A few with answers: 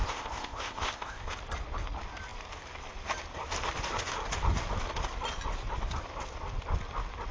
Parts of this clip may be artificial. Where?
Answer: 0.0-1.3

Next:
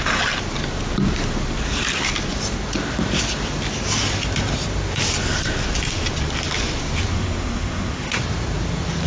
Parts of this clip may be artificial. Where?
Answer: 7.1-8.2

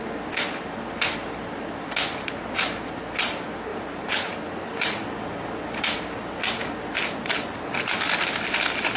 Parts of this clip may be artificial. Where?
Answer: none